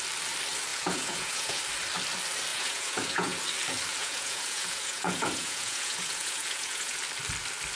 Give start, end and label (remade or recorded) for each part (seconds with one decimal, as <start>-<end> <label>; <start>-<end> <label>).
0.0-0.7 recorded; 0.7-1.6 remade; 1.6-2.5 recorded; 2.5-3.4 remade; 3.4-4.0 recorded; 4.0-7.0 remade; 7.0-7.8 recorded